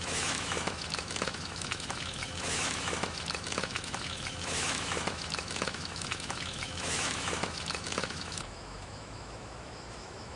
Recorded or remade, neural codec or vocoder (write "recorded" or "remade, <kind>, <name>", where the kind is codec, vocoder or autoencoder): remade, autoencoder, DAC-VAE